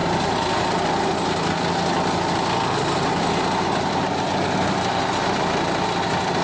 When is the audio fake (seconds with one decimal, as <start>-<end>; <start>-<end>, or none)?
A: none